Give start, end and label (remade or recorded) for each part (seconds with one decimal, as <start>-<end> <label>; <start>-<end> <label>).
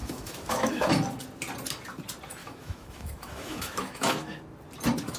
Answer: 0.0-0.9 remade; 0.9-2.4 recorded; 2.4-4.4 remade; 4.4-5.2 recorded